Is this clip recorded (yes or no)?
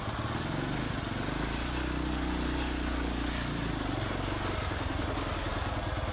yes